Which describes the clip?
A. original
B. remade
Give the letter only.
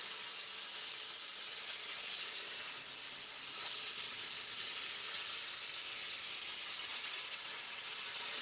A